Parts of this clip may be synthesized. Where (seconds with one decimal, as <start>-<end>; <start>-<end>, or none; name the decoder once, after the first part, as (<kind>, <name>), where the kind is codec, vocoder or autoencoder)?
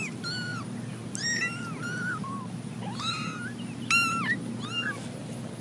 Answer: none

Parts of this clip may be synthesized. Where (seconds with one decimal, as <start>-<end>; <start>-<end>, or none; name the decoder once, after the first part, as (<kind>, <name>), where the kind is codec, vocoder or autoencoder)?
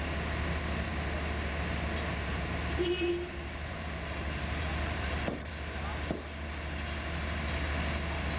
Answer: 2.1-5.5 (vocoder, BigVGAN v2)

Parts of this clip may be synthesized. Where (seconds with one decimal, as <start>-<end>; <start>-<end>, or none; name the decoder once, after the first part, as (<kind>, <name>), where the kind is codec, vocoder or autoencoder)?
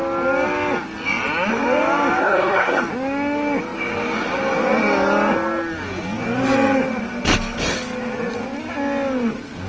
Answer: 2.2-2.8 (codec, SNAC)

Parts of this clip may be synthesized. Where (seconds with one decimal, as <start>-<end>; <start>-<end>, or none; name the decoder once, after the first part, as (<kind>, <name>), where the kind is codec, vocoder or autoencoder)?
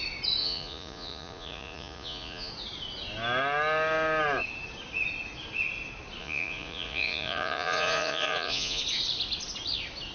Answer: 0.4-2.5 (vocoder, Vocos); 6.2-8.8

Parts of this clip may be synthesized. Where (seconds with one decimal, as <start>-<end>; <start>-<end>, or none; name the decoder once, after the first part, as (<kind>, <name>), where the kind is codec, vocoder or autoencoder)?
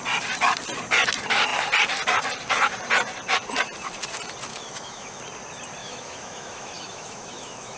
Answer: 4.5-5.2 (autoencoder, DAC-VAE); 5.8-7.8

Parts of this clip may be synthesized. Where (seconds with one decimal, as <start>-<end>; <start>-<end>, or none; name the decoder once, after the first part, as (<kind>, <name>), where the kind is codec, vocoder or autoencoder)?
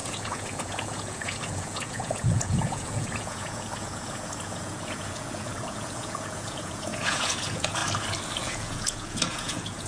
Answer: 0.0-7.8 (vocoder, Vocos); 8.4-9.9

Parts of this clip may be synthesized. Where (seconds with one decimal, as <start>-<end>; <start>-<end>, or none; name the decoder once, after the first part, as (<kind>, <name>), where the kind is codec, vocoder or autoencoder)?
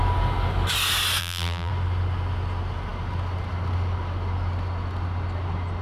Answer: 1.2-1.7 (vocoder, BigVGAN v2)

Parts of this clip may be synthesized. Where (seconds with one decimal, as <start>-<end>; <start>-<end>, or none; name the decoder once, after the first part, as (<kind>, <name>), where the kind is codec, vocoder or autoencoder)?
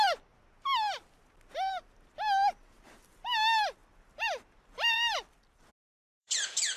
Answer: 3.8-5.7 (vocoder, BigVGAN v2); 6.2-6.8